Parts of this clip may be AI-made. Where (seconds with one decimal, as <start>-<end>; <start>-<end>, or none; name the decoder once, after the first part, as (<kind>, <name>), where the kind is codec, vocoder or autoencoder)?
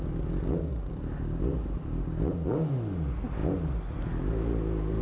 none